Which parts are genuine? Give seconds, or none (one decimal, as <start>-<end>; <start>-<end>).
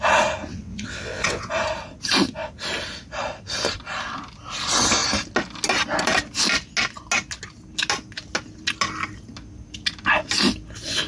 0.0-0.5; 1.5-11.1